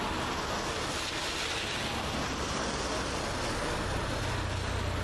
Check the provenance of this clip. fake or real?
real